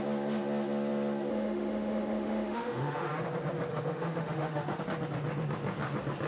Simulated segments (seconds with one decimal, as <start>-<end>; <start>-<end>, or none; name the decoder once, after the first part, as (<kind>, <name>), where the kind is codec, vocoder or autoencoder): 1.3-3.1 (autoencoder, DAC-VAE); 3.7-4.8